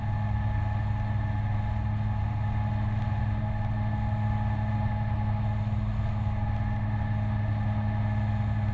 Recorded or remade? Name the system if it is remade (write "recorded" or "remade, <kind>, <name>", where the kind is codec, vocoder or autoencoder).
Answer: recorded